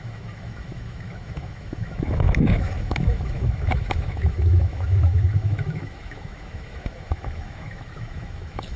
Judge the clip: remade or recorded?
remade